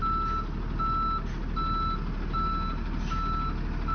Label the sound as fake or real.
real